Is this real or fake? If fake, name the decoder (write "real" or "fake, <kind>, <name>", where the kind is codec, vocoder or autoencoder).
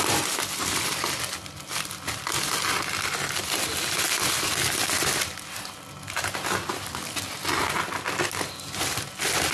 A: real